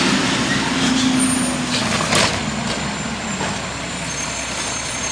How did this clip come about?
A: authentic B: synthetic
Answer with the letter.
A